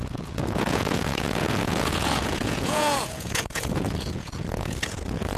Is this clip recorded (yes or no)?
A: no